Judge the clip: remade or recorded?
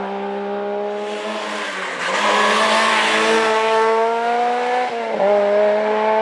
recorded